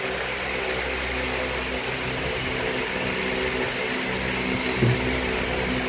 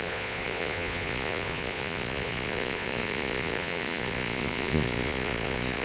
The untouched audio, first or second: first